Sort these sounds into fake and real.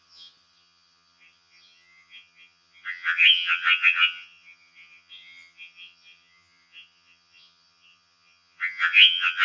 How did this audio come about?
fake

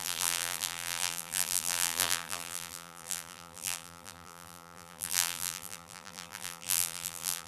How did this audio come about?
fake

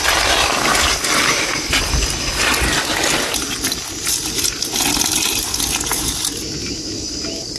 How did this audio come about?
real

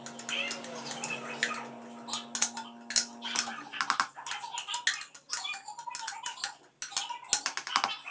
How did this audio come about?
real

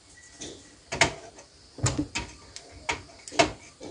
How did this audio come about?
real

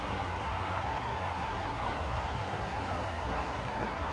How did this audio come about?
fake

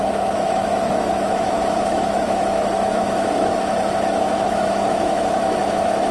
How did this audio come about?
fake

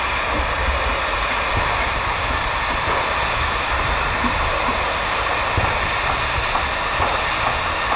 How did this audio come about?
real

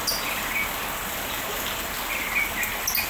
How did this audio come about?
real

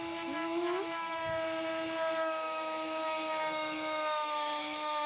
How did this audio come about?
fake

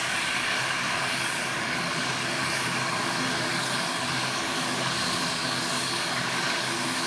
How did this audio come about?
fake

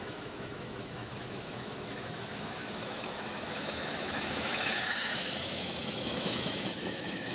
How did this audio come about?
fake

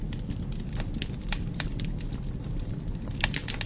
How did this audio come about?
real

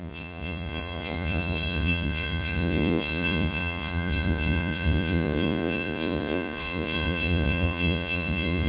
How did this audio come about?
fake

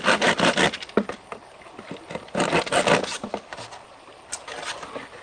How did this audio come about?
real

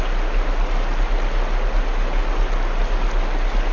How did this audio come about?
real